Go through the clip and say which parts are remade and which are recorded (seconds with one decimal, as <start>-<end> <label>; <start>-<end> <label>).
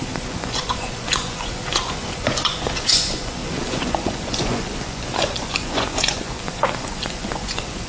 0.0-7.9 remade